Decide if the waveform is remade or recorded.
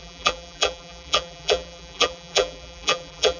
remade